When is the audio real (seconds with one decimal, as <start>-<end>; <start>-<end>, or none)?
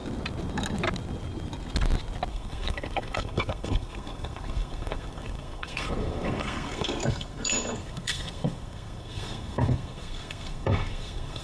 0.0-2.3